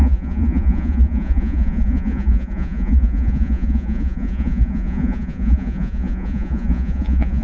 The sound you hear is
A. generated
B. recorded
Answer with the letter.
A